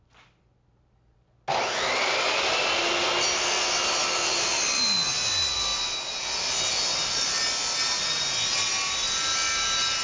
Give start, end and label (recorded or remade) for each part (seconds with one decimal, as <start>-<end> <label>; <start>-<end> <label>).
0.0-10.0 recorded